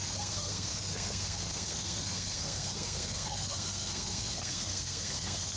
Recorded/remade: remade